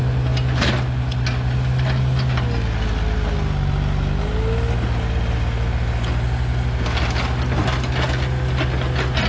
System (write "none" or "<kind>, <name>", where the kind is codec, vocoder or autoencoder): none